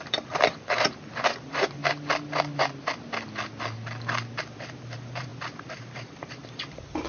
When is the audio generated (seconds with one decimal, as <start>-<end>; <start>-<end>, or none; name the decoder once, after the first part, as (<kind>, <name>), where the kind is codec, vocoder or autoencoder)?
0.0-1.8 (vocoder, BigVGAN v2); 4.4-7.1

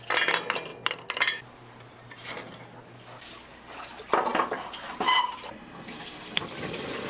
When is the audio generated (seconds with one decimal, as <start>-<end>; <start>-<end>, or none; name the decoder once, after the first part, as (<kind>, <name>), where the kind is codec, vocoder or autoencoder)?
0.7-2.8 (vocoder, BigVGAN v2); 4.3-6.4

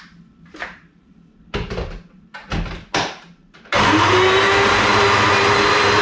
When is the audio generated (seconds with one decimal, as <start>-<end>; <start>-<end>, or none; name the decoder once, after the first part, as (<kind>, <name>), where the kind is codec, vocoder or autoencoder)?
0.0-2.4 (vocoder, BigVGAN v2); 3.0-6.0

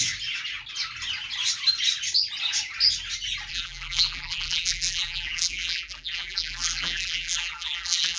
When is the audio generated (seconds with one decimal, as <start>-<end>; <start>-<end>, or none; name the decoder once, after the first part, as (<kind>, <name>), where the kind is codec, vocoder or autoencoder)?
3.5-8.2 (vocoder, BigVGAN v2)

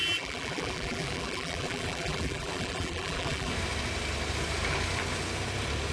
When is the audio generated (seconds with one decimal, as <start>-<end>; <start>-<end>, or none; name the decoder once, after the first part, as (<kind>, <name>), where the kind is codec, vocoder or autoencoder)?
0.0-3.5 (vocoder, BigVGAN v2)

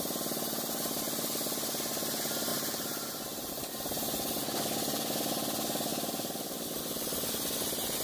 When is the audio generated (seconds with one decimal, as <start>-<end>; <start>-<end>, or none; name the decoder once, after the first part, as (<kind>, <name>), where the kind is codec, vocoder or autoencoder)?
2.5-3.5 (vocoder, BigVGAN v2); 5.9-6.8

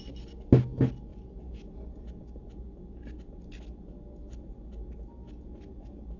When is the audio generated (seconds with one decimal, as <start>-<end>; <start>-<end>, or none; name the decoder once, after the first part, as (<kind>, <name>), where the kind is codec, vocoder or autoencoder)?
1.1-2.0 (vocoder, BigVGAN v2)